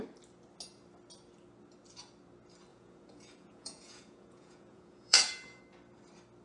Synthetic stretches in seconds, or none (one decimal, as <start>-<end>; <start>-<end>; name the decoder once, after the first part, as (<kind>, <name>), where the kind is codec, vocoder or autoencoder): 2.7-5.6 (vocoder, Vocos)